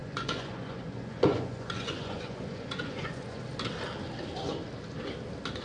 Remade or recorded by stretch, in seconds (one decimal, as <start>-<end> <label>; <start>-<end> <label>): 0.0-3.4 remade; 3.4-5.6 recorded